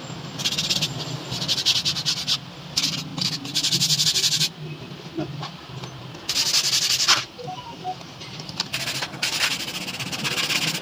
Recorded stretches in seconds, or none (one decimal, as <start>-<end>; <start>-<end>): 0.0-10.8